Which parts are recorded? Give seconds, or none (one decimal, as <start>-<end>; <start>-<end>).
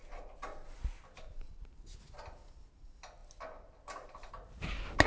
0.0-5.1